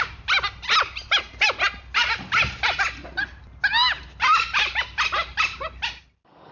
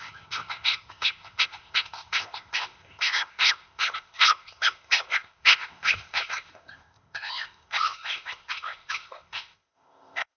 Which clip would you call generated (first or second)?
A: second